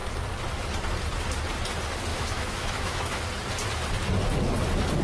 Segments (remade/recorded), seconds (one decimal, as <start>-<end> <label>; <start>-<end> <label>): 0.0-2.1 recorded; 2.1-3.2 remade; 3.2-5.0 recorded